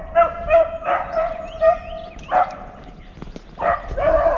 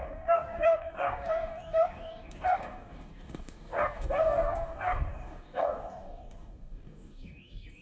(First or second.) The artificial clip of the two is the second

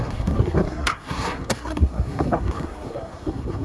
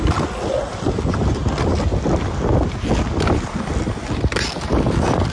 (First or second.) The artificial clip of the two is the first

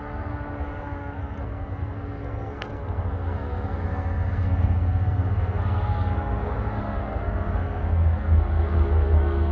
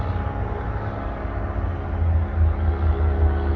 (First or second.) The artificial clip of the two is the first